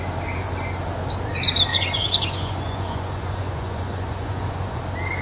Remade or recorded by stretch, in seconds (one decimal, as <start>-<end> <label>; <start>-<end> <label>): 0.0-1.7 recorded; 1.7-4.8 remade; 4.8-5.2 recorded